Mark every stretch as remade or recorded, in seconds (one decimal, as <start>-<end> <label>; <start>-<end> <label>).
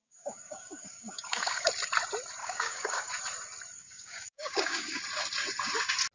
0.0-1.7 remade; 1.7-2.4 recorded; 2.4-3.1 remade; 3.1-3.8 recorded; 3.8-5.0 remade; 5.0-6.1 recorded